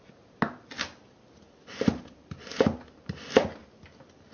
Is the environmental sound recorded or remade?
recorded